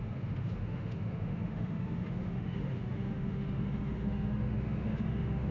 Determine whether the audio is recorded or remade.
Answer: remade